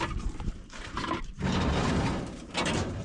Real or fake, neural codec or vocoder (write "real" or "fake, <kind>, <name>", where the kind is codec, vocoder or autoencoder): fake, vocoder, BigVGAN v2